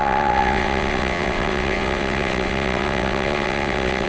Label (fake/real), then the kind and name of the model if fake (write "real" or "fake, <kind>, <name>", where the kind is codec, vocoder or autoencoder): fake, vocoder, WaveNeXt